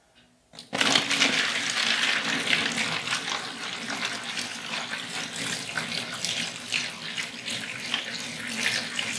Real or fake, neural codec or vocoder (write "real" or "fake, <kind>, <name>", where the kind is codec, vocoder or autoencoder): real